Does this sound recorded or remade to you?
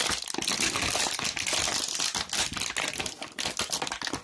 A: recorded